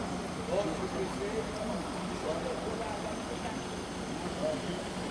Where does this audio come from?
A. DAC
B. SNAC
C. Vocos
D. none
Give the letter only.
D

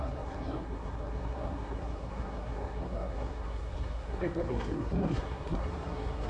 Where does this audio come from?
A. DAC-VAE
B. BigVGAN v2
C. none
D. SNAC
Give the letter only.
D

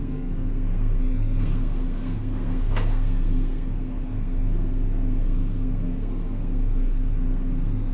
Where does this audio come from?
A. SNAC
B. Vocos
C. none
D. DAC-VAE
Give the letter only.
A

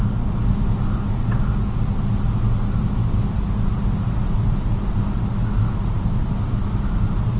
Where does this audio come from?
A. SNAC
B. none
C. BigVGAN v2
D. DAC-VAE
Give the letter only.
B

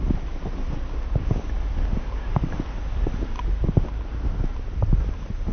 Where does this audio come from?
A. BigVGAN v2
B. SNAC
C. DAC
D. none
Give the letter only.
D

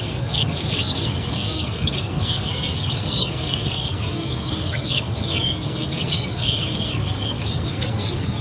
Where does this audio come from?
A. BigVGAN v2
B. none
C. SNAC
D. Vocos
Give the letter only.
C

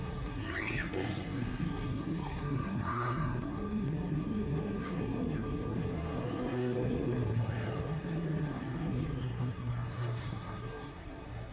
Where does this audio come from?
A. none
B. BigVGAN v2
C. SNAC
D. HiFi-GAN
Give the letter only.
C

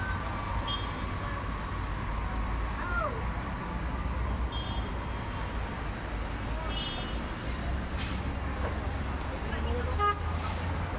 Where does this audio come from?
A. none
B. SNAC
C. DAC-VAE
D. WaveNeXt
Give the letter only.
A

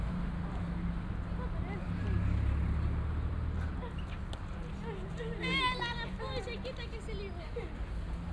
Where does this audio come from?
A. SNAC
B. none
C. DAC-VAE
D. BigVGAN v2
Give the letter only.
B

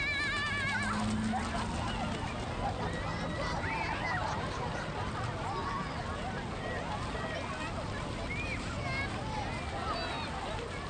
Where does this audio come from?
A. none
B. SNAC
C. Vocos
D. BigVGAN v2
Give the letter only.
A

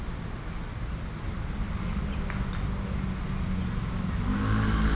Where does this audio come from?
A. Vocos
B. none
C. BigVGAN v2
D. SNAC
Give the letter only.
B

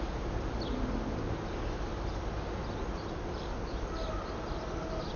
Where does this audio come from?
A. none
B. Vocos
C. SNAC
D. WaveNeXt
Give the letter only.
A